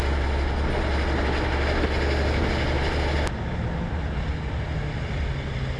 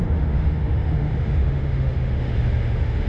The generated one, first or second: second